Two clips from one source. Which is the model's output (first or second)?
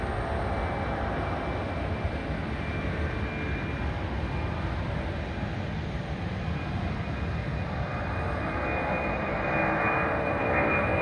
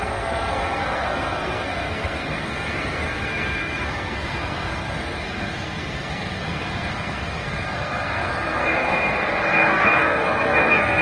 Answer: second